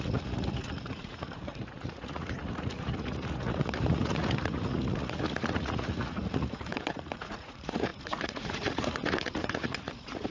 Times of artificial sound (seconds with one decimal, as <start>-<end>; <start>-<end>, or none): 0.0-10.3